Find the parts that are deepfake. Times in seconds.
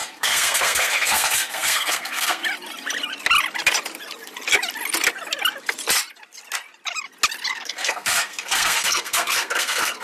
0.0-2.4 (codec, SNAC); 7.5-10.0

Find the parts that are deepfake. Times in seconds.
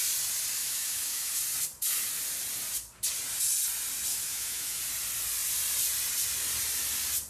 0.6-1.4 (autoencoder, DAC-VAE); 4.1-4.8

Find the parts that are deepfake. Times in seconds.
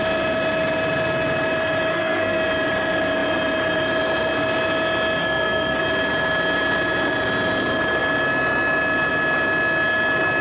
1.9-2.4 (codec, SNAC); 5.2-5.8